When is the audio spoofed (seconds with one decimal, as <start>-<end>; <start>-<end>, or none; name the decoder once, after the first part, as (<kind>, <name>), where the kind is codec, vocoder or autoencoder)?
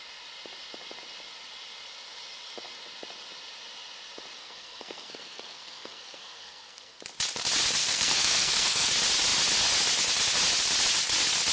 4.4-7.0 (codec, SNAC); 7.8-8.9